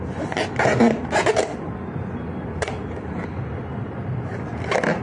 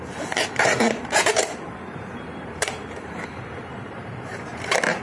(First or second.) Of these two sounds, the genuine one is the first